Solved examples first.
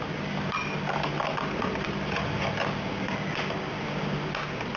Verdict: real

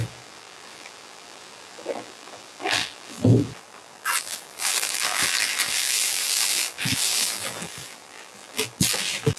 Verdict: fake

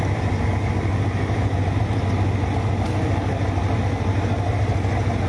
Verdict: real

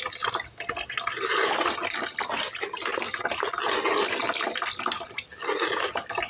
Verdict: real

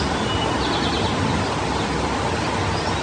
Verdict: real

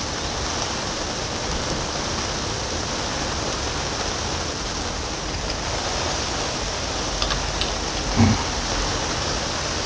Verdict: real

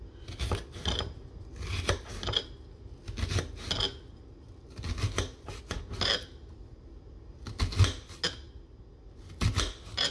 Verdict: real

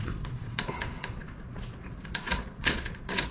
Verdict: fake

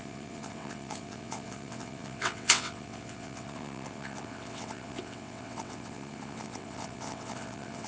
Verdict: fake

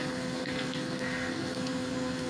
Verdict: fake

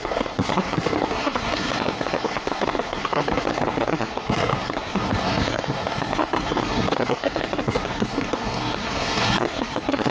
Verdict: fake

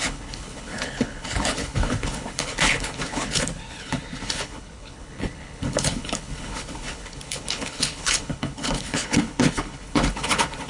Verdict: fake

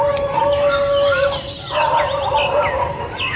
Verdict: real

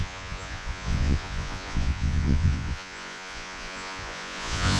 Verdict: fake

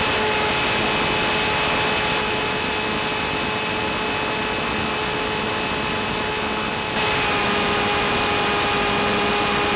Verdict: real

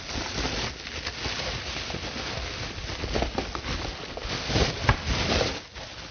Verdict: real